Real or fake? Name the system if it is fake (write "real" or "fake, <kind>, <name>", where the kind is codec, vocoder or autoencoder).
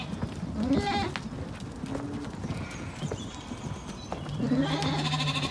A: real